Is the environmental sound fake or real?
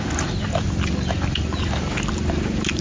real